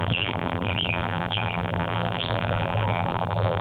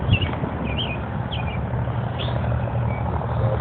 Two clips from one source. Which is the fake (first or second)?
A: first